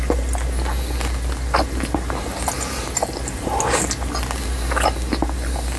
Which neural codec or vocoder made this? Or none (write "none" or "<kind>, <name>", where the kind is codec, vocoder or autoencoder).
none